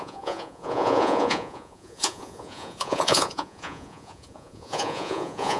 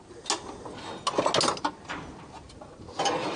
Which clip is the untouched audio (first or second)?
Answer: second